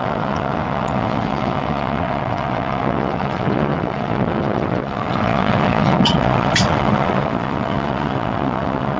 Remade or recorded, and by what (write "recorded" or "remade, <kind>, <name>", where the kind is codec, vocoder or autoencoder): remade, vocoder, WaveNeXt